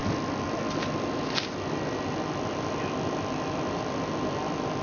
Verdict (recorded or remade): recorded